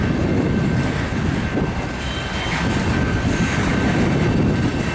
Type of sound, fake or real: real